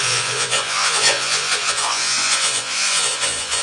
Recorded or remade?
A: remade